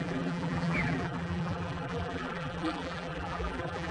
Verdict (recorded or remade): remade